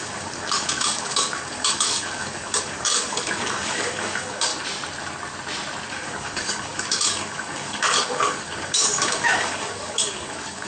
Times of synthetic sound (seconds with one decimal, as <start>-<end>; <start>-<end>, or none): 0.0-4.5; 5.9-10.7